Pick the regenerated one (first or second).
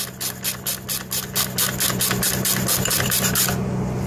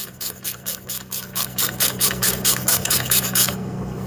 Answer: second